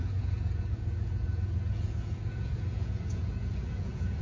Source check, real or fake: fake